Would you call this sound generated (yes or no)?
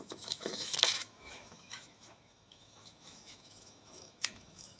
yes